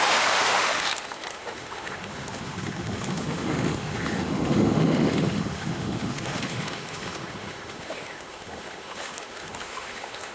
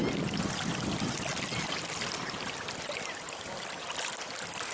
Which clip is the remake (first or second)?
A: first